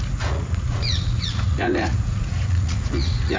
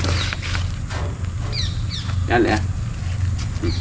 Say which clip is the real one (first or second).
second